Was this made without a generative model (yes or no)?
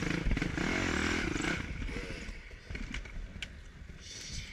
yes